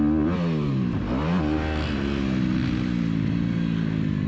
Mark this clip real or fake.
real